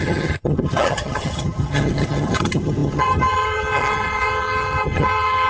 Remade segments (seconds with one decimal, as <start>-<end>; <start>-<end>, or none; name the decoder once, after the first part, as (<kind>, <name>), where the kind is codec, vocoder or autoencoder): 0.0-5.5 (vocoder, HiFi-GAN)